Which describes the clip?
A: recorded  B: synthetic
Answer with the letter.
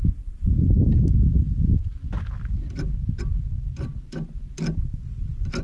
A